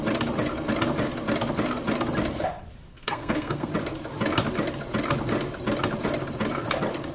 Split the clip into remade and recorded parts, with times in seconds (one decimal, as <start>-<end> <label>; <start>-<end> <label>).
0.0-2.9 recorded; 2.9-3.7 remade; 3.7-7.1 recorded